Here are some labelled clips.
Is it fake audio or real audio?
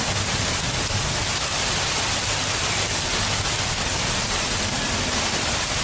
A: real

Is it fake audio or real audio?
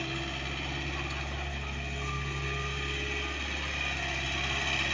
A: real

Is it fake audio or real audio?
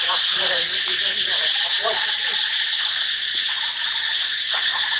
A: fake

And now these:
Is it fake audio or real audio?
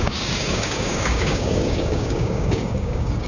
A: fake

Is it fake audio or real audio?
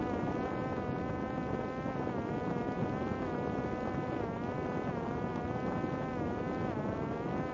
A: real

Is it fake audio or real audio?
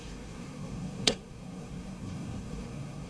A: fake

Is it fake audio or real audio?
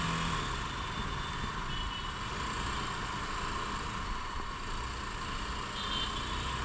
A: real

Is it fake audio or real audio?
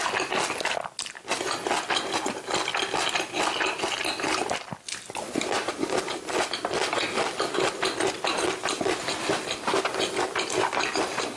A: real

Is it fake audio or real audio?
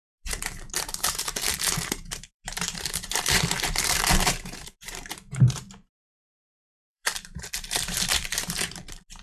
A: fake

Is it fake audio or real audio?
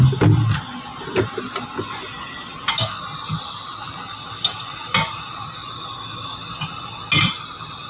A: real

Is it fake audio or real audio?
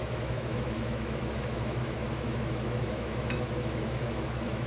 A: fake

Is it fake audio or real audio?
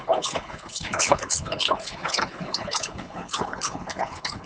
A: fake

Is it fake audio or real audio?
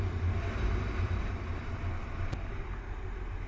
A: real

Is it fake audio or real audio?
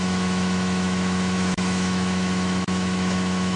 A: fake